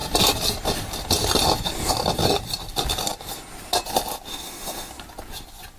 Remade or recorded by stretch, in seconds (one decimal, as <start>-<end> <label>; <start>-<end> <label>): 0.0-4.3 recorded; 4.3-4.9 remade; 4.9-5.8 recorded